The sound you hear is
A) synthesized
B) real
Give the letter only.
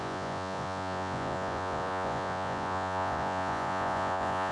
A